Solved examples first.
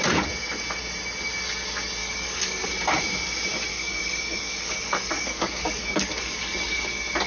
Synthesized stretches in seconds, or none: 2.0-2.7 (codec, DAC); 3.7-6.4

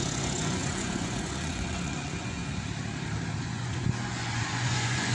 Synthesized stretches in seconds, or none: 0.0-2.4 (vocoder, Vocos); 3.4-5.1